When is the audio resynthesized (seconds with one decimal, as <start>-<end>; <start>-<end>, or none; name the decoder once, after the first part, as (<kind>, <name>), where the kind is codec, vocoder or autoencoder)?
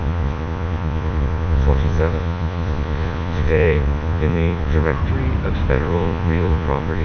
0.0-5.0 (vocoder, Vocos); 5.7-7.0